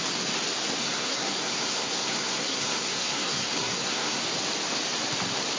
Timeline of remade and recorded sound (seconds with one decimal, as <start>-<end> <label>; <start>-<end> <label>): 0.0-0.8 recorded; 0.8-4.2 remade; 4.2-5.6 recorded